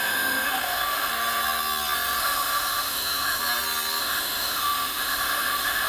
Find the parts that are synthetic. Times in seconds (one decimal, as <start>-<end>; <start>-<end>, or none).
0.0-1.1; 2.2-3.4; 4.0-5.9